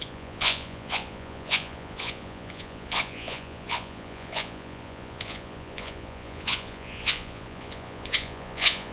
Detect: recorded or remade remade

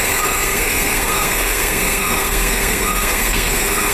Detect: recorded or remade remade